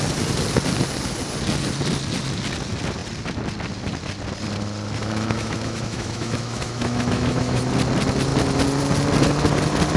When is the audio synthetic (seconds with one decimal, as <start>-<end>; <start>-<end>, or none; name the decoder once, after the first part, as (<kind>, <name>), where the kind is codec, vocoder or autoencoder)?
5.0-7.6 (autoencoder, DAC-VAE)